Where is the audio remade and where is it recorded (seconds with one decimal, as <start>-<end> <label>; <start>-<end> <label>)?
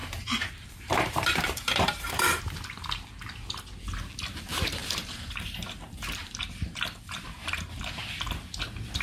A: 0.0-2.4 remade; 2.4-4.8 recorded; 4.8-7.8 remade; 7.8-9.0 recorded